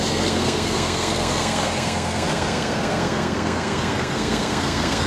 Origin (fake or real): fake